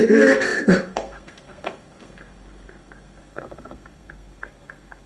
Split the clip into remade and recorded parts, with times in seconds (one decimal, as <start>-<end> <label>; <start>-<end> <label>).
0.0-5.1 remade